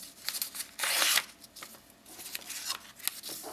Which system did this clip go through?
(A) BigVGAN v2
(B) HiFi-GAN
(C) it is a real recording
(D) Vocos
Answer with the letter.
C